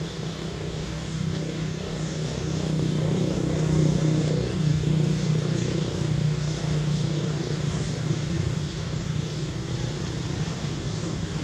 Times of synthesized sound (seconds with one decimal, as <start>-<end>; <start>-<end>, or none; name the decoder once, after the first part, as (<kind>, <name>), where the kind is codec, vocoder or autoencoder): 0.0-9.7 (codec, DAC); 10.5-11.4